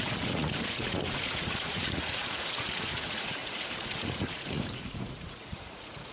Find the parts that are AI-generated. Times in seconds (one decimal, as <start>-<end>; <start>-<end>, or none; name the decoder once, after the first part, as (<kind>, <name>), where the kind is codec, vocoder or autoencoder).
0.0-6.1 (vocoder, Vocos)